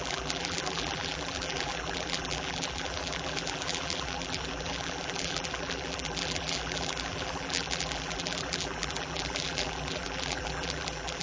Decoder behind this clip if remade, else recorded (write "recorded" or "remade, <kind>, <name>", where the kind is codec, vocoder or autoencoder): remade, vocoder, BigVGAN v2